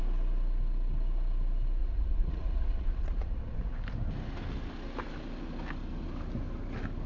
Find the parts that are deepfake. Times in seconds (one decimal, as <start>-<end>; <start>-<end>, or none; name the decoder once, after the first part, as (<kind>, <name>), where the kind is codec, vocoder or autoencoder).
1.8-3.7 (vocoder, Vocos)